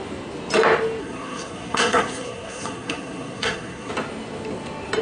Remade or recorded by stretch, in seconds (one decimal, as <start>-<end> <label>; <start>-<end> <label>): 0.0-1.0 recorded; 1.0-3.9 remade; 3.9-5.0 recorded